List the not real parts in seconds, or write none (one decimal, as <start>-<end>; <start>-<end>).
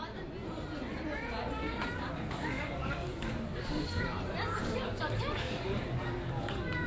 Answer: 1.6-4.0; 4.6-6.9